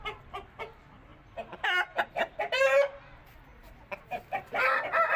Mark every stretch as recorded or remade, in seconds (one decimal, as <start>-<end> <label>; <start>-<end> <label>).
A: 0.0-3.5 recorded; 3.5-4.2 remade; 4.2-5.2 recorded

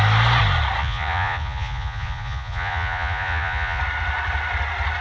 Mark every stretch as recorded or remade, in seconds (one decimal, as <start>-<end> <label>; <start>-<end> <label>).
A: 0.0-0.8 recorded; 0.8-3.8 remade; 3.8-5.0 recorded